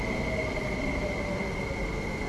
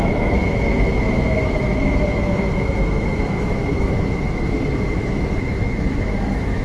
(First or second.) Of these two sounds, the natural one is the first